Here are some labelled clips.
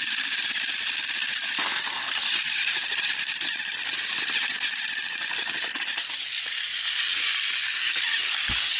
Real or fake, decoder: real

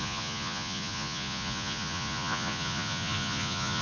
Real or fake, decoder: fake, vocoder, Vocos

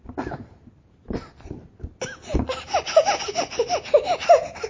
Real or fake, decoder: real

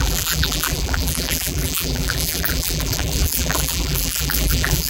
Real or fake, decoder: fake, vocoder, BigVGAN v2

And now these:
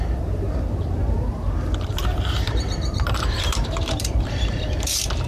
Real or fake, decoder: fake, vocoder, BigVGAN v2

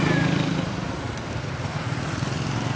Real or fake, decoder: fake, vocoder, BigVGAN v2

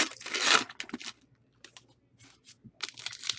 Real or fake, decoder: real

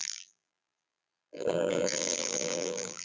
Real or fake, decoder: fake, vocoder, BigVGAN v2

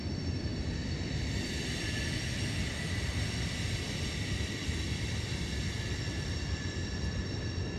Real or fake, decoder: fake, vocoder, BigVGAN v2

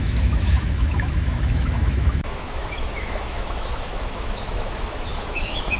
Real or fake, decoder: fake, autoencoder, DAC-VAE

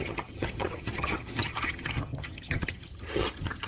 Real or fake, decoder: fake, vocoder, HiFi-GAN